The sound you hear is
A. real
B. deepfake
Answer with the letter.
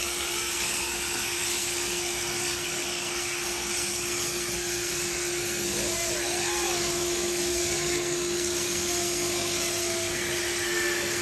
B